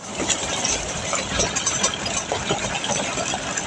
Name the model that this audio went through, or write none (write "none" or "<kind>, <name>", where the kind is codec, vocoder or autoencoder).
none